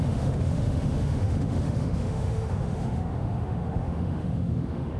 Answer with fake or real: fake